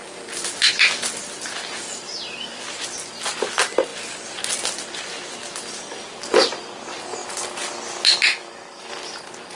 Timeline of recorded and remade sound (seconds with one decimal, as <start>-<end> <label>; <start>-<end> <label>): 0.0-8.3 recorded; 8.3-8.9 remade; 8.9-9.6 recorded